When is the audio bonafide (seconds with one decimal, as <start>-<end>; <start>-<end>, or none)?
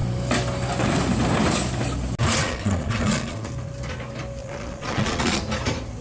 0.0-2.4; 3.5-4.4; 5.4-6.0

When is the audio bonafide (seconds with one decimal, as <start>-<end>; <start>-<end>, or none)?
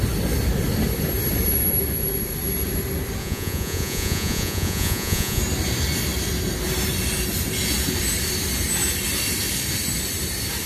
0.0-3.2; 5.4-10.7